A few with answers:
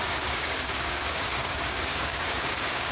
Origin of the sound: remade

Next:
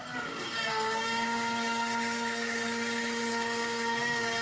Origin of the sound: remade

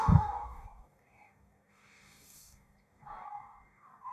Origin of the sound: remade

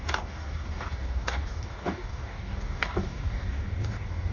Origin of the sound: remade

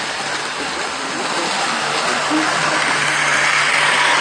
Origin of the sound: recorded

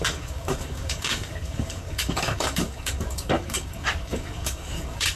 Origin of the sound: remade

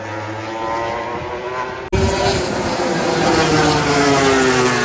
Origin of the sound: recorded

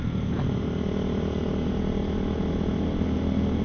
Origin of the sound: recorded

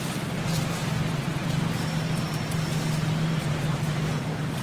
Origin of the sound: recorded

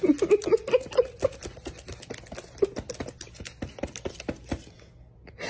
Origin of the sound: recorded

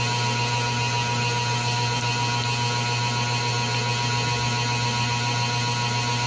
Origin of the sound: recorded